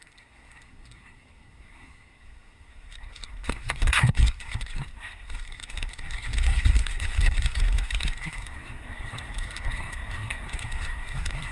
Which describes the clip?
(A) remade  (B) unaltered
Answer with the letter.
A